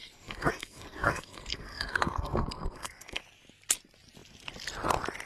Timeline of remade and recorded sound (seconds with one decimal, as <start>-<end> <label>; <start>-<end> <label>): 0.0-3.2 remade; 3.2-5.3 recorded